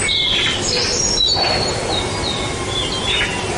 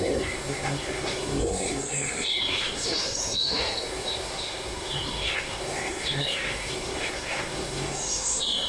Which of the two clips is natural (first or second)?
first